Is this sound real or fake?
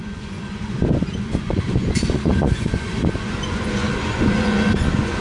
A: fake